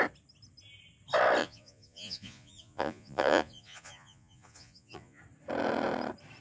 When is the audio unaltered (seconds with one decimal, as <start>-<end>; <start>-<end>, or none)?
0.0-1.4; 5.2-6.4